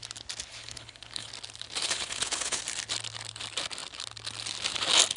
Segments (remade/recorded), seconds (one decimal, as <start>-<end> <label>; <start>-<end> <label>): 0.0-0.5 recorded; 0.5-1.3 remade; 1.3-1.8 recorded; 1.8-2.6 remade; 2.6-5.2 recorded